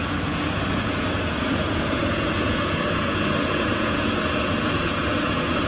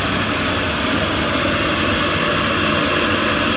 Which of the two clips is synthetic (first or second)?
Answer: first